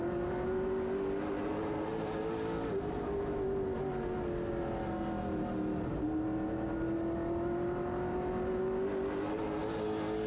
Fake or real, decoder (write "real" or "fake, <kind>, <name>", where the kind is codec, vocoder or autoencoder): real